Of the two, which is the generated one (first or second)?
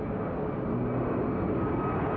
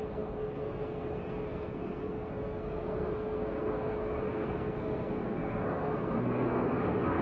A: second